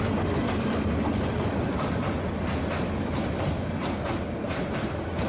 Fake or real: real